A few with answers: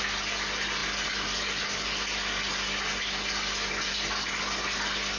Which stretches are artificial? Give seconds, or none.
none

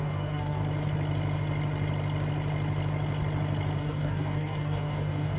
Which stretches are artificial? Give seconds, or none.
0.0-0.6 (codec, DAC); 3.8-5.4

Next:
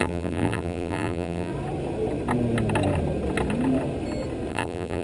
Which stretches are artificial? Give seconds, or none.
0.0-1.5 (vocoder, BigVGAN v2); 4.5-5.0